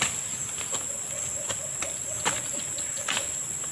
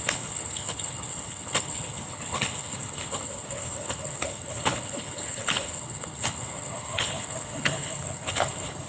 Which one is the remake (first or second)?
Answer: second